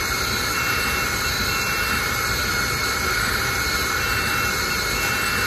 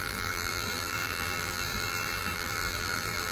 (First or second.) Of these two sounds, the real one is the first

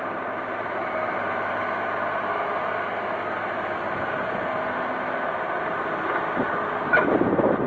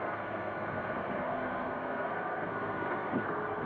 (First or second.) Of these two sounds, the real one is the first